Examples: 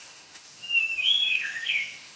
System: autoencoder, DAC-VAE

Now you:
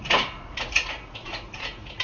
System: vocoder, Vocos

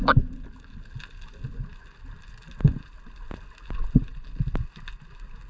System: none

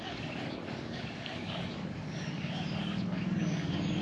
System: codec, DAC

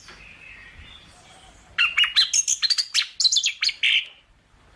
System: none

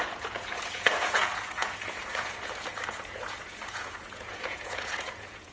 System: vocoder, Vocos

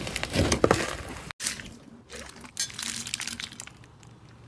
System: none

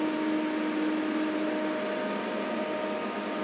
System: none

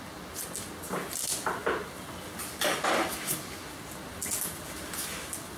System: none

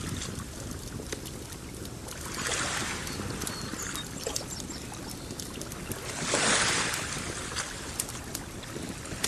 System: none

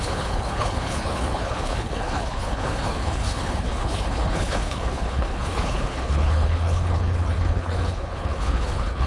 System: codec, HILCodec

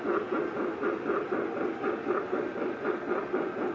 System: none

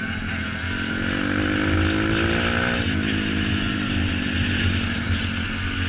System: none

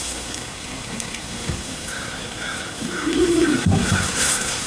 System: codec, SNAC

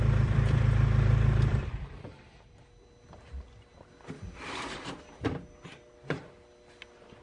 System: vocoder, BigVGAN v2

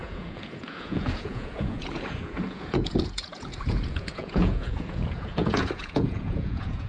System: vocoder, Vocos